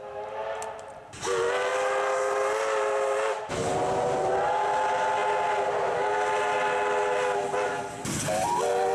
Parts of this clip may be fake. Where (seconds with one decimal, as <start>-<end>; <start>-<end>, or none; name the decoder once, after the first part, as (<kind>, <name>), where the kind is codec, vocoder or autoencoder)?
none